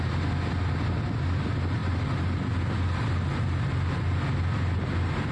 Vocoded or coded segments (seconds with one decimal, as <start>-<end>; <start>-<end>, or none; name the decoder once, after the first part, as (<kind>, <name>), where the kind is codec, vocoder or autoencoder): none